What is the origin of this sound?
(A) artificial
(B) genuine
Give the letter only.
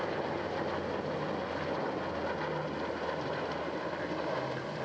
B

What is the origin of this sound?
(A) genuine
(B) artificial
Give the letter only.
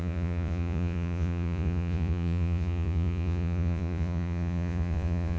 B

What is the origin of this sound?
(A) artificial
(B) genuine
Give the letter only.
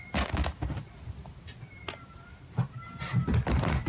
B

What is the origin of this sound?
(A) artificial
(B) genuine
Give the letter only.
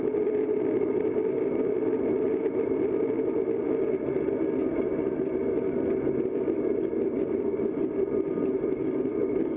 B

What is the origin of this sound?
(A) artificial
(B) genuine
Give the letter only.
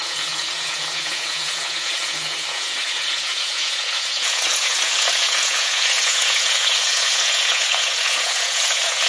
A